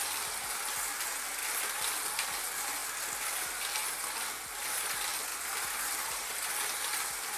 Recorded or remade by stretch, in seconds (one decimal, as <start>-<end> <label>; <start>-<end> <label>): 0.0-7.4 recorded